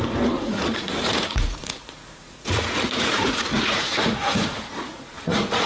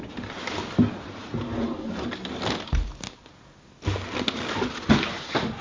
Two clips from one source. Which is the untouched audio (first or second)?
second